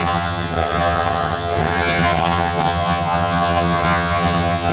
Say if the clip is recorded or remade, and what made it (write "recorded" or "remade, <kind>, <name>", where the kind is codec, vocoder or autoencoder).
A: remade, vocoder, HiFi-GAN